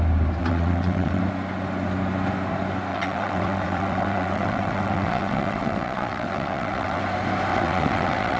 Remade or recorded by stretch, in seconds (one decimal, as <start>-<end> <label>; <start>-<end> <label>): 0.0-0.4 recorded; 0.4-1.2 remade; 1.2-2.9 recorded; 2.9-7.0 remade; 7.0-7.5 recorded; 7.5-8.4 remade